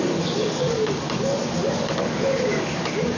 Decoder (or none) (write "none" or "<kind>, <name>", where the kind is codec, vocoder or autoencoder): codec, DAC